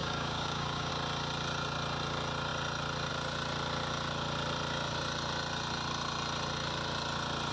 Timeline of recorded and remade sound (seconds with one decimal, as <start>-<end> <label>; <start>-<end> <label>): 0.0-0.9 remade; 0.9-7.5 recorded